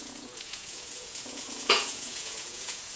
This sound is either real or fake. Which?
fake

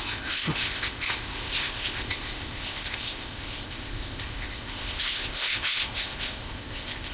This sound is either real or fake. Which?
fake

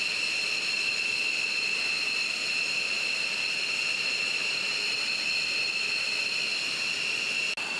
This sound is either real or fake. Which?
real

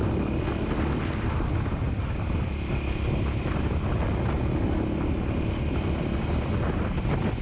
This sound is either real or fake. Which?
real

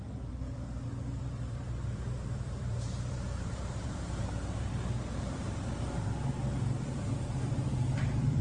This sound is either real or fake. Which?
fake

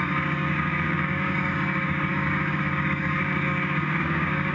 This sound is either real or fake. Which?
fake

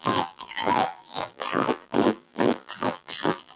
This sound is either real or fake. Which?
fake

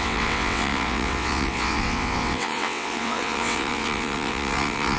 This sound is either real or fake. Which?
fake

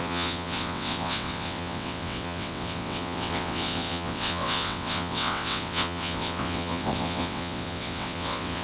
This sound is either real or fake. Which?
fake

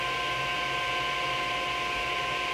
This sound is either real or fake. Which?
real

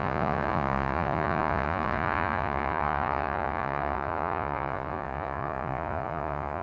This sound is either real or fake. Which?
fake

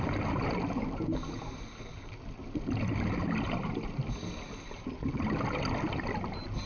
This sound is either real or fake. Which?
real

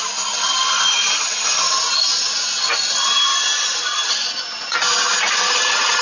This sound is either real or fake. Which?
real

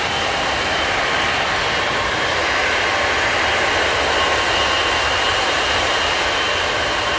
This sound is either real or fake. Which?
real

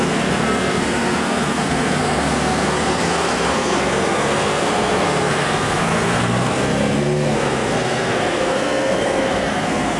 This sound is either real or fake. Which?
fake